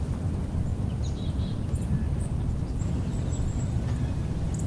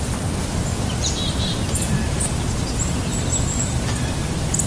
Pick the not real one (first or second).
first